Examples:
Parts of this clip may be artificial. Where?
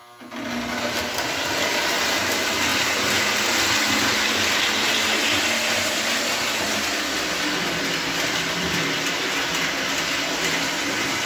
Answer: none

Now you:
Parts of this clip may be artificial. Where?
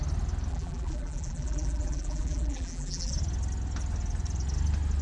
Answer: 0.5-3.1 (vocoder, BigVGAN v2)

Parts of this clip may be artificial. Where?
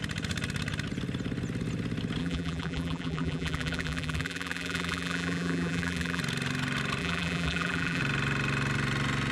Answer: 2.2-6.2 (vocoder, BigVGAN v2); 7.0-8.0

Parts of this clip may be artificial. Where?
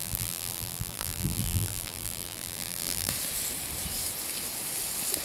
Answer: 0.0-3.1 (vocoder, BigVGAN v2)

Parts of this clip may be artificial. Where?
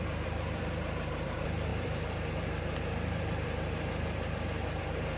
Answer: 0.0-5.2 (vocoder, BigVGAN v2)